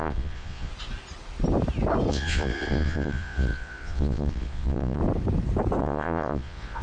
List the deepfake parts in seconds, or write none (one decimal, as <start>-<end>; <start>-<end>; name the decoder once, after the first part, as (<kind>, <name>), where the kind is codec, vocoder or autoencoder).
0.0-0.7 (vocoder, Vocos); 2.1-5.0; 5.8-6.8